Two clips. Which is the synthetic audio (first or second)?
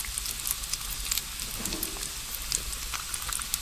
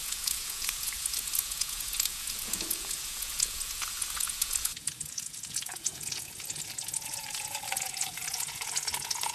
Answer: second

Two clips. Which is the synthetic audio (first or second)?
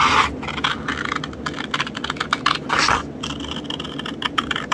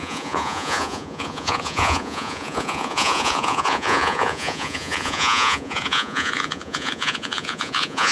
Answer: second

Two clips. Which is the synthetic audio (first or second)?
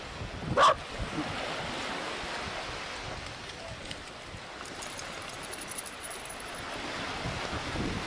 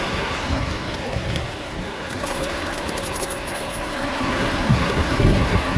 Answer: second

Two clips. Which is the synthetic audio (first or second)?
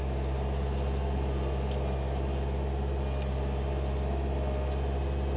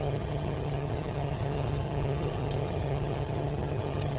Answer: second